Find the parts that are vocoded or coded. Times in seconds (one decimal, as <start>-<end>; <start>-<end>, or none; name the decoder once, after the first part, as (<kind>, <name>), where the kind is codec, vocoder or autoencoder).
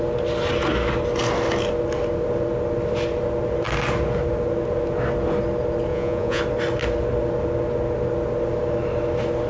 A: 5.9-6.4 (vocoder, Vocos)